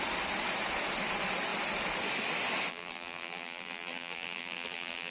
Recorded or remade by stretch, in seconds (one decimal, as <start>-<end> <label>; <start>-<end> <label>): 0.0-2.7 recorded; 2.7-5.1 remade